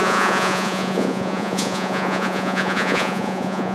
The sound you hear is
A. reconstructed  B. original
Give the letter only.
A